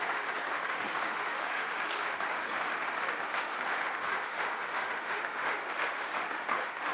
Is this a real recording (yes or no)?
no